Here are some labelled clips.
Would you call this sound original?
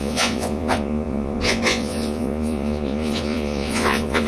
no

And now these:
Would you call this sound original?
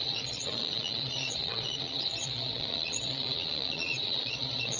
no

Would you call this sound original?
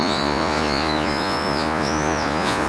no